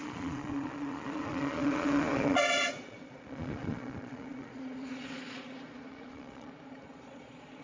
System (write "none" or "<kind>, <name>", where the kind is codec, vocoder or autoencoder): vocoder, Vocos